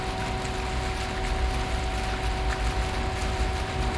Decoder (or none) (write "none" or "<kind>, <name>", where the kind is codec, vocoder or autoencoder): none